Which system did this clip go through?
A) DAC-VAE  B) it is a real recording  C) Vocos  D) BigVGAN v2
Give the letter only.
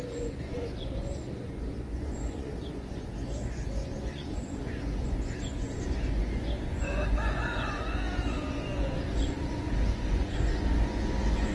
C